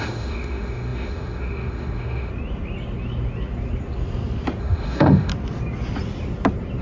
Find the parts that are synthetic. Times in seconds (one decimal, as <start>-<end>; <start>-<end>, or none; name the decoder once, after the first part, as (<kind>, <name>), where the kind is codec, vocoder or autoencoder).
0.0-2.3 (autoencoder, DAC-VAE); 4.6-5.3